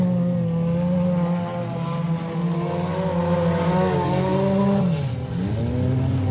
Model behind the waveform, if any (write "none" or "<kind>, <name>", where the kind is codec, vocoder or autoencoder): none